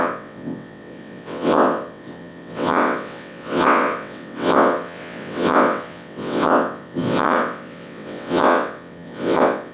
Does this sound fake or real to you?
fake